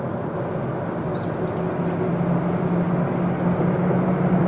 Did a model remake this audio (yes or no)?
no